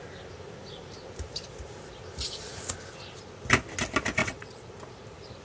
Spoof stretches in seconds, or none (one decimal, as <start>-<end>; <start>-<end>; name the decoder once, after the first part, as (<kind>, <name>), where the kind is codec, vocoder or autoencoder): 4.2-4.7 (vocoder, WaveNeXt)